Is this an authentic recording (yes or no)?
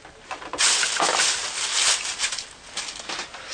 yes